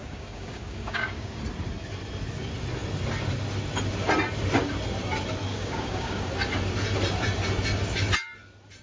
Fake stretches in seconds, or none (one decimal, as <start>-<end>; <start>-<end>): 0.0-1.4; 5.5-6.3